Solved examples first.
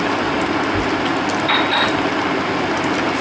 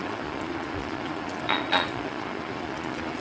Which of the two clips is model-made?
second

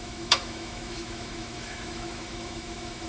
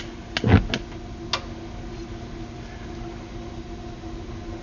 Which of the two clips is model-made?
first